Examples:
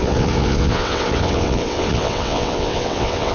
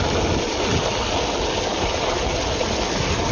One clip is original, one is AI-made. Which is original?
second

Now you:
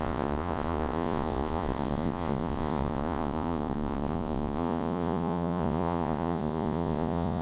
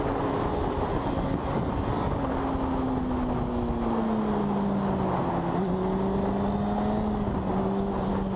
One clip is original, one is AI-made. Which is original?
second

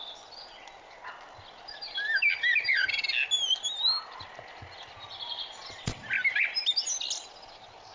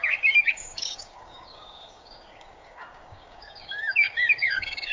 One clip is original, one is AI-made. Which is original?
first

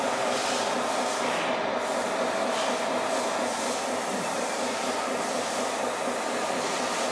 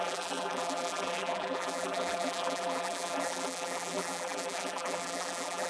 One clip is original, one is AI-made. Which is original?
first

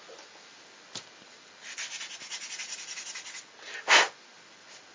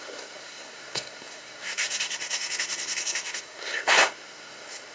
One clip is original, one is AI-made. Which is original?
first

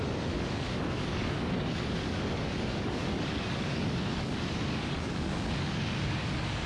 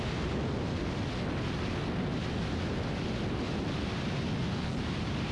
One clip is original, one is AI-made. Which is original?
second